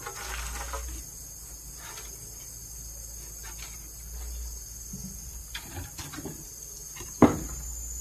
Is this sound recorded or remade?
recorded